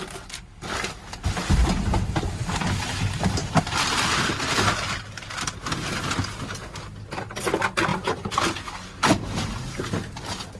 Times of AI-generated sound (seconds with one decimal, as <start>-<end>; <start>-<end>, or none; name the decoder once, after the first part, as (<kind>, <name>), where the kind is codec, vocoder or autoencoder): 3.4-4.0 (vocoder, BigVGAN v2); 7.9-8.5